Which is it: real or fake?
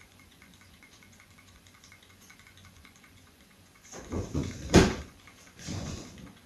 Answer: fake